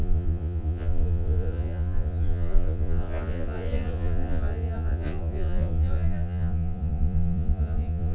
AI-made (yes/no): yes